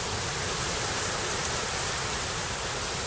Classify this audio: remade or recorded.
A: recorded